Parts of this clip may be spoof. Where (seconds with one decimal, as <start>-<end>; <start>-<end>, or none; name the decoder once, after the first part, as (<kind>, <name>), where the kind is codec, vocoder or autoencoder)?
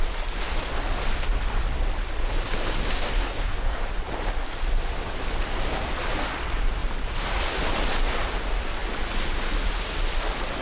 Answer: 2.9-3.8 (codec, DAC)